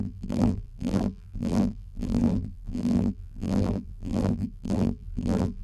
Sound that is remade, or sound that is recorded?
remade